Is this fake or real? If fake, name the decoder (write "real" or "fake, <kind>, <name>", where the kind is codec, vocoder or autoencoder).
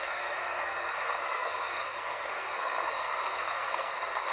fake, codec, SNAC